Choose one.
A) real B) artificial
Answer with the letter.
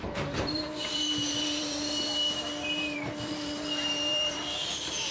B